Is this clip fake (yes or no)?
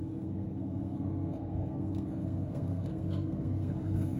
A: yes